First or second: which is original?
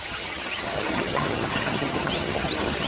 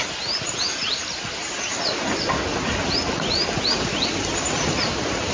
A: second